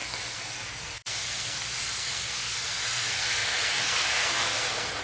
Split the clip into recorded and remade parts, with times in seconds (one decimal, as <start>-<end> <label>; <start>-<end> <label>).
0.0-5.0 remade